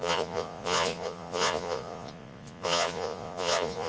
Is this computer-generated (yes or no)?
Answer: yes